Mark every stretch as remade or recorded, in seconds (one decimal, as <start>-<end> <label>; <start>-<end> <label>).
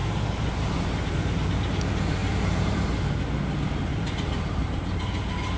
0.0-2.2 recorded; 2.2-2.9 remade; 2.9-3.9 recorded; 3.9-5.0 remade; 5.0-5.6 recorded